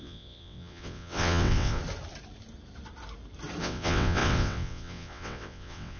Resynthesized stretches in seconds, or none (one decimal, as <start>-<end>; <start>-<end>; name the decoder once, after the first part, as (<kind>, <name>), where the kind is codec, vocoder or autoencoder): 0.0-1.8 (vocoder, WaveNeXt); 3.6-6.0